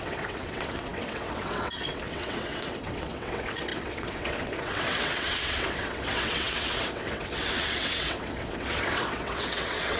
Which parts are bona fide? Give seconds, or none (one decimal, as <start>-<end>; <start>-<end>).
none